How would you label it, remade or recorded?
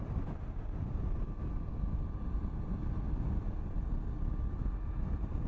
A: recorded